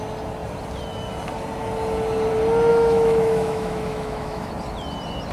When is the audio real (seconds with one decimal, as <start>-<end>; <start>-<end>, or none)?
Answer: 0.0-2.7; 4.5-5.3

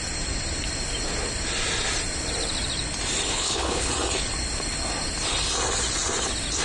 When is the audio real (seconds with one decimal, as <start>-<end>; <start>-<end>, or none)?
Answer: 0.0-3.3; 3.9-6.6

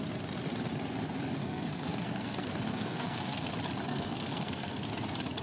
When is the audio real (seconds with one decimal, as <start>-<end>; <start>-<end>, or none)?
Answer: 0.0-1.4; 3.5-3.9; 4.9-5.4

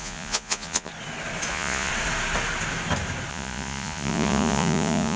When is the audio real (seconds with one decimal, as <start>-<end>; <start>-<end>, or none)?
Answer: 0.9-1.5; 1.9-3.3

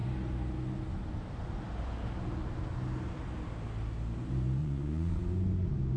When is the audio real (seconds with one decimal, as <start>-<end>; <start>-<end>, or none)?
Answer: 0.0-4.6; 5.2-6.0

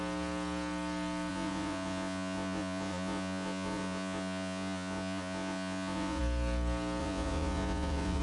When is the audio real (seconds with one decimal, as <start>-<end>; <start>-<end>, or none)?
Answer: 0.0-1.3; 6.2-7.0

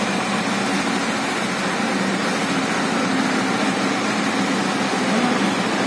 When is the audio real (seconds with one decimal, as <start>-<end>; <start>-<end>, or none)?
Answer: 0.0-5.9